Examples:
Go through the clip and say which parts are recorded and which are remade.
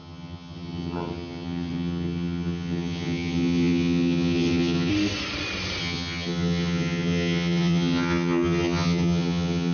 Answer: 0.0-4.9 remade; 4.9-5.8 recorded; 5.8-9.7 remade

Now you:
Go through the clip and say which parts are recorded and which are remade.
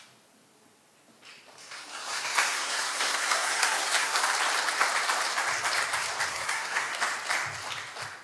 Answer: 0.0-1.6 recorded; 1.6-4.2 remade; 4.2-6.3 recorded; 6.3-6.9 remade; 6.9-8.2 recorded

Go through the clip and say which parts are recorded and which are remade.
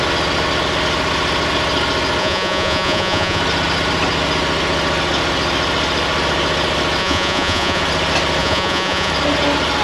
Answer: 0.0-2.2 recorded; 2.2-3.4 remade; 3.4-7.0 recorded; 7.0-7.8 remade; 7.8-8.4 recorded; 8.4-9.1 remade; 9.1-9.8 recorded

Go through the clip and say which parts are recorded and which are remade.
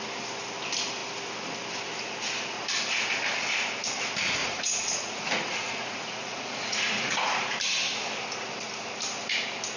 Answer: 0.0-4.4 recorded; 4.4-7.6 remade; 7.6-9.8 recorded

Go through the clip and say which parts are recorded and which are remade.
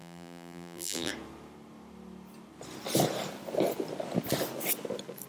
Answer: 0.0-1.1 remade; 1.1-5.3 recorded